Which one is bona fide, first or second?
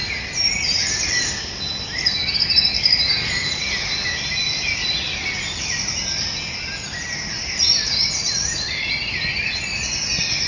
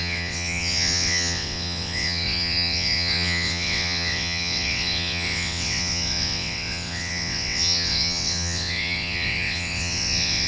first